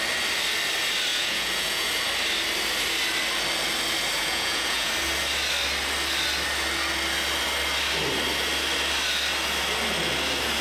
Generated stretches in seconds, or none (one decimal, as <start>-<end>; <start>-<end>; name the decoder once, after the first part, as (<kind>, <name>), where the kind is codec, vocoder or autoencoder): 1.1-1.9 (vocoder, Vocos); 4.2-4.9